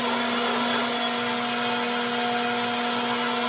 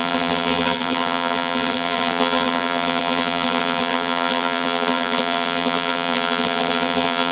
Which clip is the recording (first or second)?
first